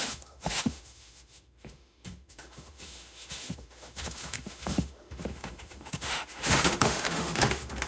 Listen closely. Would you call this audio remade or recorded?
remade